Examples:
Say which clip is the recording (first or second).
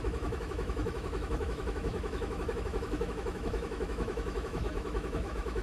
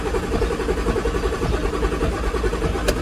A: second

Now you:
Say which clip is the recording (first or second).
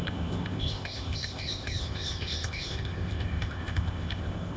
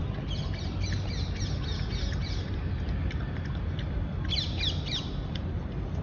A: second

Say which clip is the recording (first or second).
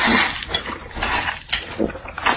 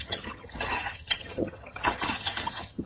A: first